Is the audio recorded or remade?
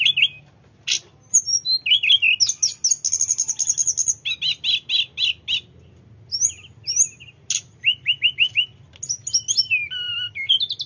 recorded